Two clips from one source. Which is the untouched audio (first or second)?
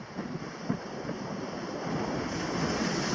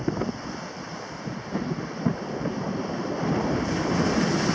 first